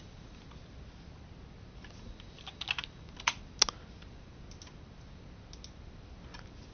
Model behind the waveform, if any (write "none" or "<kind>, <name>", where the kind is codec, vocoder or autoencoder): none